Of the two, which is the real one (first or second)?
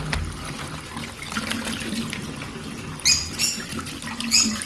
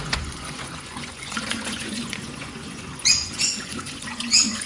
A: first